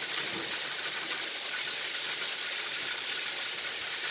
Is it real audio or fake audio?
real